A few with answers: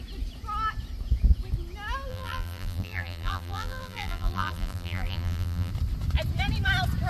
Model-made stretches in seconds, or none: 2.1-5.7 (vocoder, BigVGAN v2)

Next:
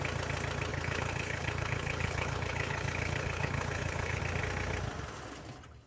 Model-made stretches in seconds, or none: 0.7-4.2 (codec, HILCodec)

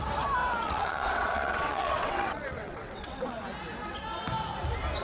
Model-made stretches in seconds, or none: 0.4-3.4 (vocoder, WaveNeXt)

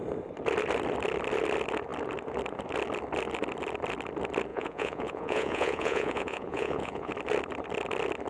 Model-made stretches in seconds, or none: 4.5-7.1 (vocoder, Vocos)

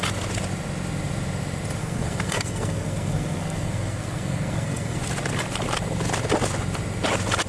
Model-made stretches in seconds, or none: 1.8-5.0 (codec, SNAC)

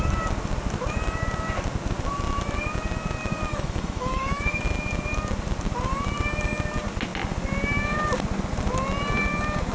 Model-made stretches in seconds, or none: 3.5-4.6 (autoencoder, DAC-VAE)